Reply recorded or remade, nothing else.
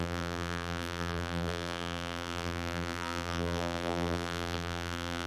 remade